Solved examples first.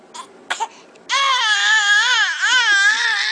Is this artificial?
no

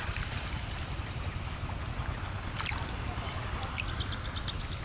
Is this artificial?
no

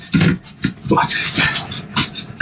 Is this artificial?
no